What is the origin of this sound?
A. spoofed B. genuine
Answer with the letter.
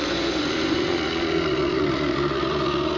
A